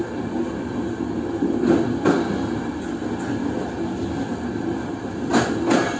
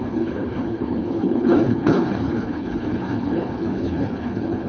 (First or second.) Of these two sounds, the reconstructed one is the second